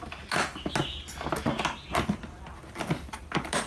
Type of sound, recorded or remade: recorded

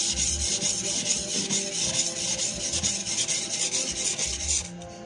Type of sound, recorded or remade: recorded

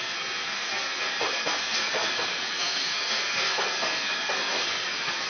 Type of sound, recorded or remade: remade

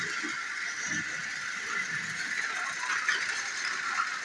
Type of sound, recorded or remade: recorded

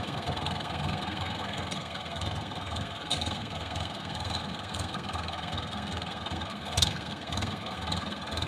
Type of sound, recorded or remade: remade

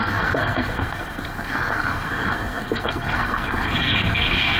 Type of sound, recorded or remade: remade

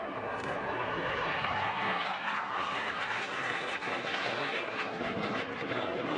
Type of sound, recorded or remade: remade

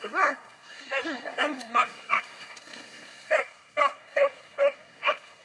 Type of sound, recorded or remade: remade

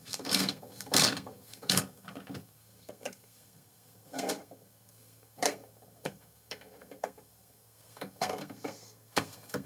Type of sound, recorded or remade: remade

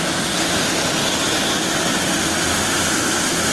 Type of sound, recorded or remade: recorded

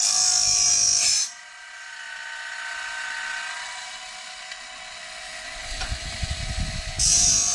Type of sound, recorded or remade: recorded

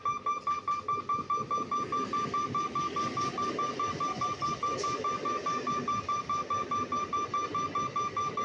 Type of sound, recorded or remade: recorded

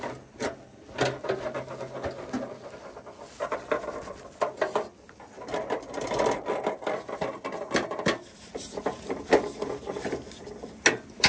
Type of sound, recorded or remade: recorded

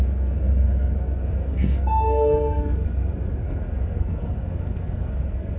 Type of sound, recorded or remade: remade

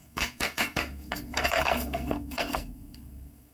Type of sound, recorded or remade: remade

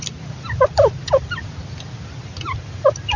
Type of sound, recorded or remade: recorded